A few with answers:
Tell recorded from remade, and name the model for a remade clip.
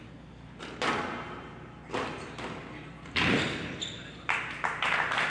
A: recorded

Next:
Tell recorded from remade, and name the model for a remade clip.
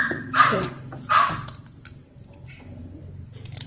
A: remade, vocoder, BigVGAN v2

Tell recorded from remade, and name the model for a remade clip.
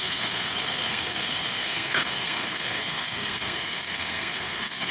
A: remade, codec, SNAC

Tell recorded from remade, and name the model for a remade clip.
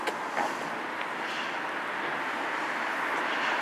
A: recorded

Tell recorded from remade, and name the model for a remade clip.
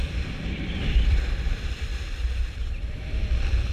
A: remade, vocoder, BigVGAN v2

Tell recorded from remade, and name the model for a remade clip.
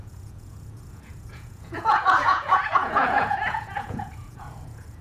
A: remade, vocoder, Vocos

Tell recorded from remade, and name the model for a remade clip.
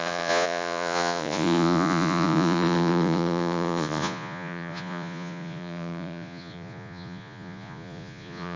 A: remade, vocoder, Vocos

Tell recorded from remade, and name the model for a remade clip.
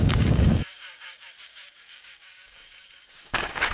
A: remade, codec, DAC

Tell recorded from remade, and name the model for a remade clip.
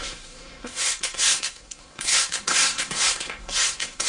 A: remade, codec, SNAC